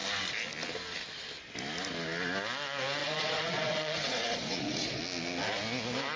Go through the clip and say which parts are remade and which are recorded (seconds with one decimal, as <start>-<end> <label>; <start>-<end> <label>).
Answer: 0.0-3.0 recorded; 3.0-5.0 remade; 5.0-6.2 recorded